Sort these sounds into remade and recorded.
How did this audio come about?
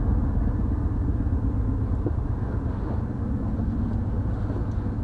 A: recorded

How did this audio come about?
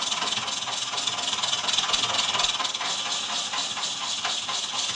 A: recorded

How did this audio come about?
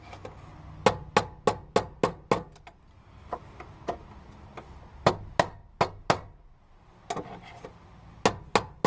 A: recorded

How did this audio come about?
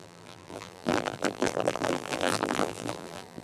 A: remade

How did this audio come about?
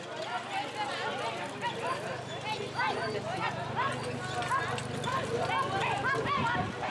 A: recorded